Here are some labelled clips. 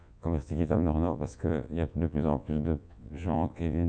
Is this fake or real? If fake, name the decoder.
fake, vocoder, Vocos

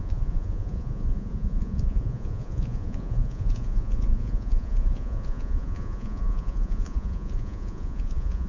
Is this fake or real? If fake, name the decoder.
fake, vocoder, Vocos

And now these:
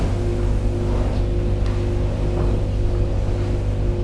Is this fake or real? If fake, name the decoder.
real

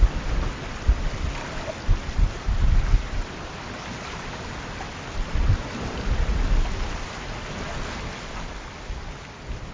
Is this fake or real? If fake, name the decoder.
real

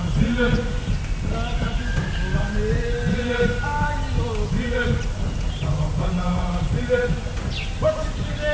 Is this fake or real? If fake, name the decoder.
real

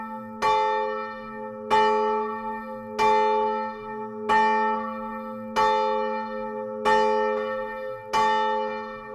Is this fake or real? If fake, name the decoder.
real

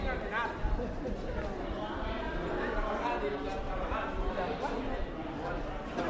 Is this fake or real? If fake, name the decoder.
real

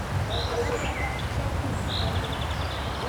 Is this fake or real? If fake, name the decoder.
real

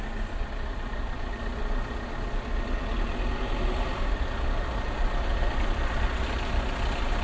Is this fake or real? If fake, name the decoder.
real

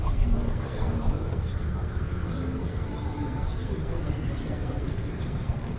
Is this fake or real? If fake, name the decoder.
fake, codec, SNAC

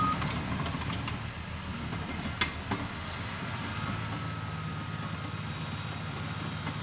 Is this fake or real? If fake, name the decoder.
real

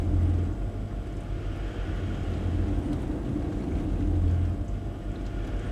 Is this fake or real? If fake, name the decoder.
real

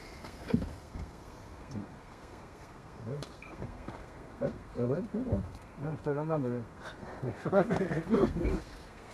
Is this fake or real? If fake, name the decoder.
fake, codec, SNAC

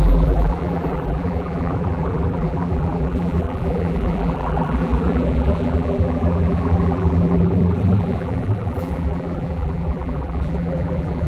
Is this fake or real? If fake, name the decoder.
fake, vocoder, BigVGAN v2